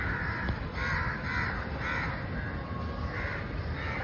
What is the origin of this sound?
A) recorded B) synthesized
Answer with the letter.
A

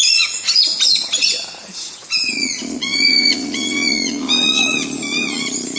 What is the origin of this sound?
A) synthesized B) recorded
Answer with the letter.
A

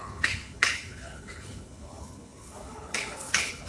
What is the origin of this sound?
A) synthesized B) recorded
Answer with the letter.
A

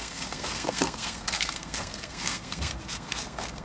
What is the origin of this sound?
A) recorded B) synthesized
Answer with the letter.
B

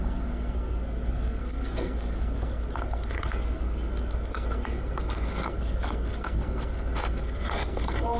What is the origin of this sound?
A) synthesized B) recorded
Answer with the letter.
A